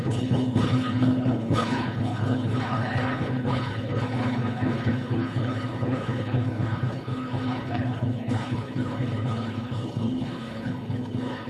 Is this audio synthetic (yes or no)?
yes